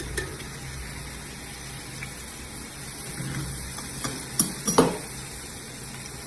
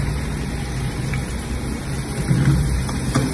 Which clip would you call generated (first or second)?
second